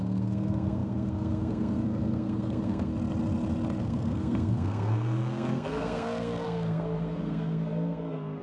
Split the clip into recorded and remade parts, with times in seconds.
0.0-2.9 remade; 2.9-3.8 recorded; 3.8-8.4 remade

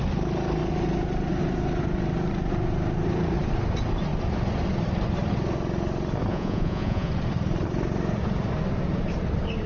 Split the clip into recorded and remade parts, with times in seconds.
0.0-6.3 recorded; 6.3-7.1 remade; 7.1-9.7 recorded

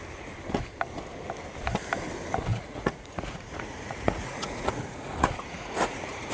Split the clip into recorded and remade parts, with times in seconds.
0.0-2.5 recorded; 2.5-6.3 remade